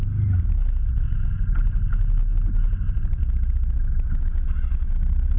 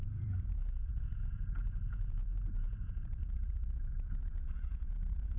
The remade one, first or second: second